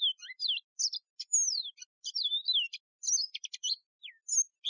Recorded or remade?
recorded